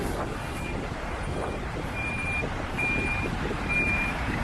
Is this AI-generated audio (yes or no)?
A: yes